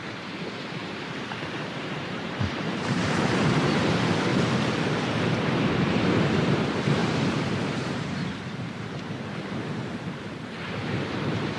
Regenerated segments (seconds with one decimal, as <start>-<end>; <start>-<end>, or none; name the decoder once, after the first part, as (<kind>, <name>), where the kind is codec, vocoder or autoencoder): 0.0-4.3 (vocoder, BigVGAN v2); 5.8-11.6